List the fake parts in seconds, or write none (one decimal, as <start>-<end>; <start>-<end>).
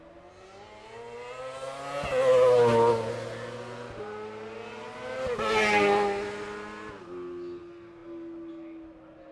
none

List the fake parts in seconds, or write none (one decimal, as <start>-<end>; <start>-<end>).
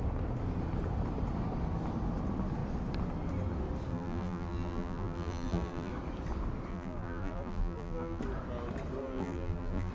3.9-5.9; 6.7-8.2; 9.0-9.9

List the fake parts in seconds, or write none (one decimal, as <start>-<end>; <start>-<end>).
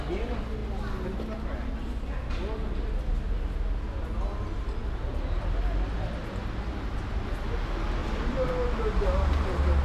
8.0-8.5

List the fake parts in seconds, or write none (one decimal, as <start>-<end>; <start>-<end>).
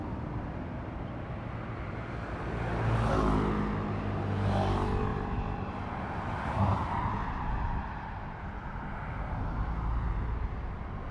5.1-5.7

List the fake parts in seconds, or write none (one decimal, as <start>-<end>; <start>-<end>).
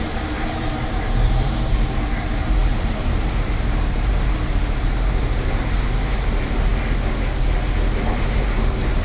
0.0-6.7; 8.1-9.0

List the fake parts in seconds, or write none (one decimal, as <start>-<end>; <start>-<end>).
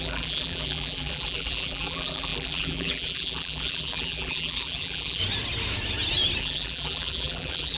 0.0-5.2; 6.4-7.8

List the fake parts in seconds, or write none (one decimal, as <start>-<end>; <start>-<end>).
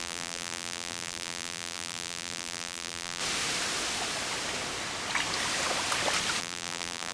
0.0-3.2; 6.4-7.1